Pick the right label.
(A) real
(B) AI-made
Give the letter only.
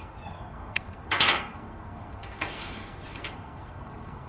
B